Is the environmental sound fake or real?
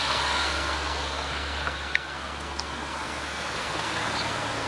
fake